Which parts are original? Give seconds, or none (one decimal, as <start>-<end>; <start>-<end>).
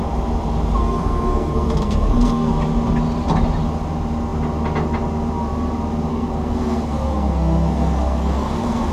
0.0-0.8; 2.5-6.1